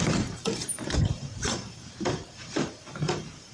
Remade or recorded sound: remade